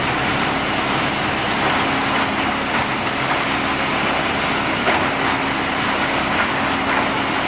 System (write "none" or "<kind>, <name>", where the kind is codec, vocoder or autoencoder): none